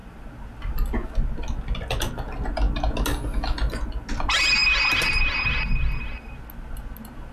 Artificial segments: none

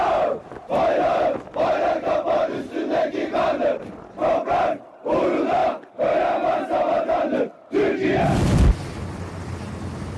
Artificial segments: none

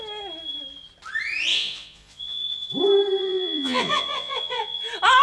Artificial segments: 1.5-2.7 (vocoder, Vocos); 3.2-4.8

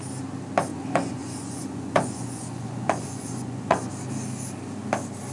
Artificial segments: 0.7-3.9 (vocoder, Vocos)

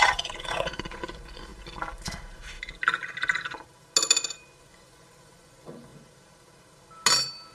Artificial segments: 0.0-1.5 (vocoder, Vocos); 4.6-5.9

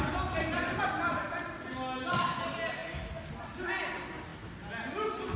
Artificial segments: none